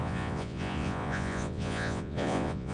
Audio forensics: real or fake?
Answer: fake